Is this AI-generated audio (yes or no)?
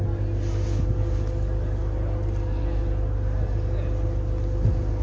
no